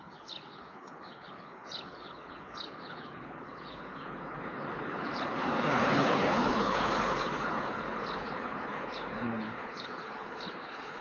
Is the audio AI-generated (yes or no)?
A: yes